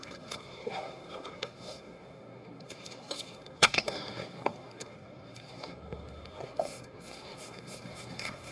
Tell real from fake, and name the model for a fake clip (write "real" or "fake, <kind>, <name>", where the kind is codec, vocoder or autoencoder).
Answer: fake, codec, SNAC